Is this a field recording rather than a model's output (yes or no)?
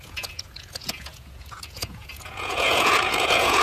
no